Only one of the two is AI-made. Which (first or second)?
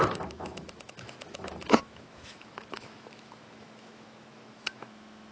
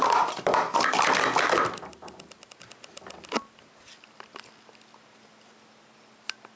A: first